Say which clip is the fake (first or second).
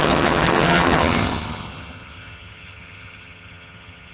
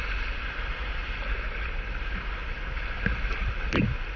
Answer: first